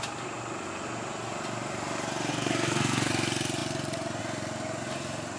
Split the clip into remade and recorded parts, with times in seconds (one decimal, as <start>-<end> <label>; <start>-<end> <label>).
0.0-2.3 recorded; 2.3-3.1 remade; 3.1-5.4 recorded